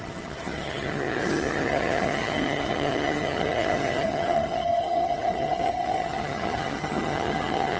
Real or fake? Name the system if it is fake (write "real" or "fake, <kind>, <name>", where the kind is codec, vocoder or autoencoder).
fake, vocoder, HiFi-GAN